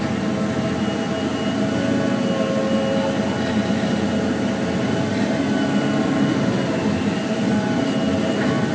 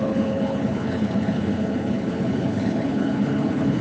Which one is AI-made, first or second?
second